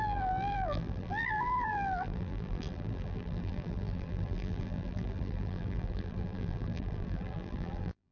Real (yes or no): no